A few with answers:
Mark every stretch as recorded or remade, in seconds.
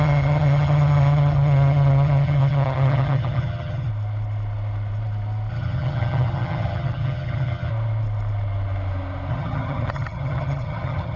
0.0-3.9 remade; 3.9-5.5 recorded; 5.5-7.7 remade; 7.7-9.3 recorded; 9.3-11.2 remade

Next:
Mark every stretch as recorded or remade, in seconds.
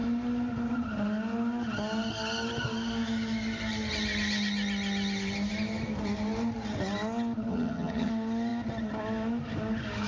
0.0-7.5 recorded; 7.5-8.1 remade; 8.1-10.1 recorded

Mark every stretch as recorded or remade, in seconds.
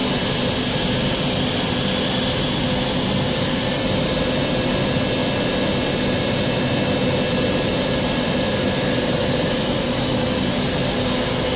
0.0-11.6 recorded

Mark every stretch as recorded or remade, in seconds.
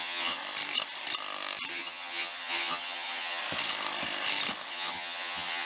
0.0-0.4 remade; 0.4-1.7 recorded; 1.7-3.4 remade; 3.4-4.7 recorded; 4.7-5.6 remade